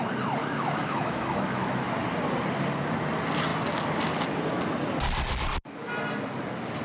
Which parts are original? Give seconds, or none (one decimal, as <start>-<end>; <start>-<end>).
0.0-0.4; 1.9-6.8